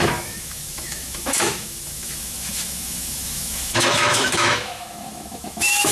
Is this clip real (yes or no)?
no